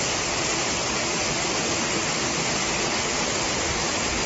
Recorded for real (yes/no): yes